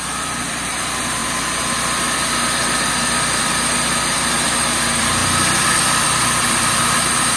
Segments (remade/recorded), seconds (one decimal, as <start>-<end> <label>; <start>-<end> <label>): 0.0-7.4 remade